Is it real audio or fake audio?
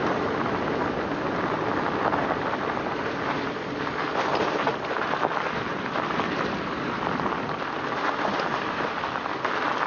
real